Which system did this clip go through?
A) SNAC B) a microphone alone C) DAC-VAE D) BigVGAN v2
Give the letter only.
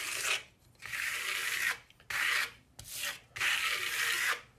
B